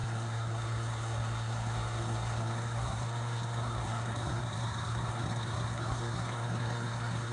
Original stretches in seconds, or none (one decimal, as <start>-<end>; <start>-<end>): none